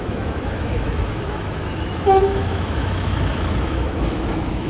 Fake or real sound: fake